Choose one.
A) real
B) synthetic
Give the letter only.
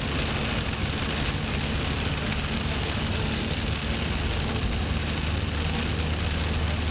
A